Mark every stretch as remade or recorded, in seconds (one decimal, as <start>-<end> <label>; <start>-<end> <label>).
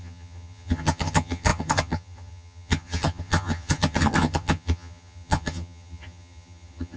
0.0-7.0 remade